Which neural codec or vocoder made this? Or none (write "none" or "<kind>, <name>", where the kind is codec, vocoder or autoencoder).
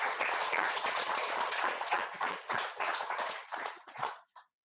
vocoder, Vocos